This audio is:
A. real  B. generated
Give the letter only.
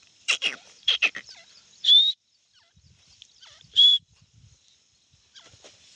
B